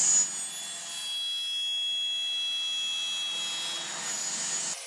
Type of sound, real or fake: real